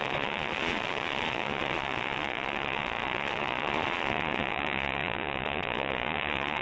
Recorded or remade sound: remade